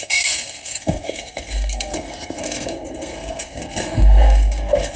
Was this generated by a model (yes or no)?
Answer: yes